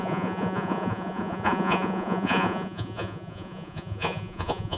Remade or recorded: remade